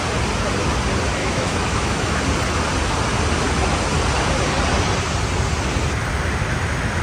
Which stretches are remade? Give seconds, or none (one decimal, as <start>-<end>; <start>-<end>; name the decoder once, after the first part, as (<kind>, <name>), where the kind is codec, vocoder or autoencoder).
1.2-2.2 (autoencoder, DAC-VAE)